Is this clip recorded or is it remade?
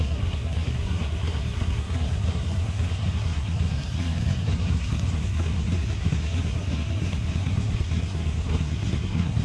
remade